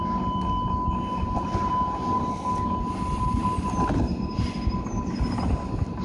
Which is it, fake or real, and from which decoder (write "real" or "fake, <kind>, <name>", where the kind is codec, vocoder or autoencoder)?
real